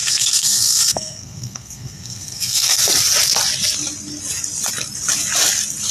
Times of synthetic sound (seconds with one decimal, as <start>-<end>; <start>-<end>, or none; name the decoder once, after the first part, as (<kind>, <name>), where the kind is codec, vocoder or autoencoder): 0.0-2.8 (codec, SNAC)